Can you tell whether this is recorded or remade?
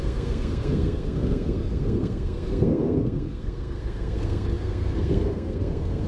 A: remade